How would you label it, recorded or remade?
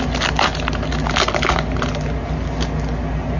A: recorded